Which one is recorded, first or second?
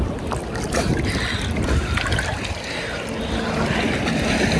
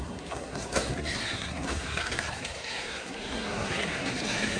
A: first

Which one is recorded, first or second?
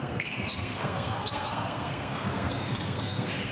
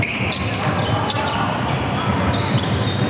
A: second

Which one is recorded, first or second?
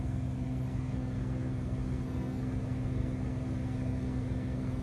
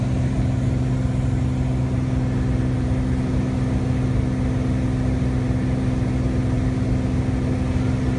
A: second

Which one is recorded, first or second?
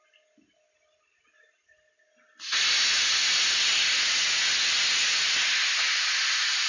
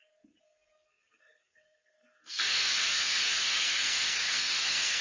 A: first